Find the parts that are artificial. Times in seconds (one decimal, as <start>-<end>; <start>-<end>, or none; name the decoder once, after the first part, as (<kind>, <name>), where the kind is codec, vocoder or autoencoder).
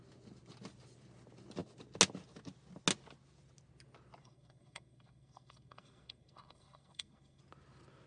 4.2-7.4 (codec, SNAC)